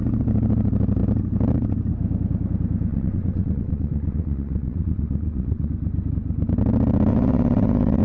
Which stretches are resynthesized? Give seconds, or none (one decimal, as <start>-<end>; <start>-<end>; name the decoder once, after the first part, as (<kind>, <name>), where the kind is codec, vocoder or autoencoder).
2.9-5.7 (vocoder, WaveNeXt); 7.1-8.0